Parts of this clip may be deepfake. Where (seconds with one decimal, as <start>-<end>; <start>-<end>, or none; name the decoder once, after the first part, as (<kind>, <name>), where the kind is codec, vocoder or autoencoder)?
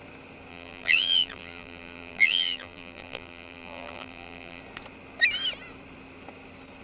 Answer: 0.5-4.6 (vocoder, BigVGAN v2)